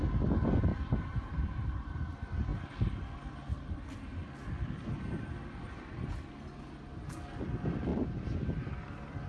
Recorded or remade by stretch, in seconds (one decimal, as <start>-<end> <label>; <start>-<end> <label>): 0.0-0.7 recorded; 0.7-2.1 remade; 2.1-9.3 recorded